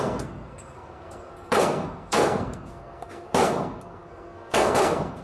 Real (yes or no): no